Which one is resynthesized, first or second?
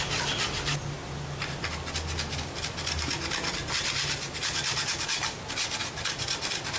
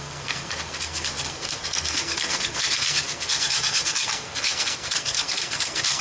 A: second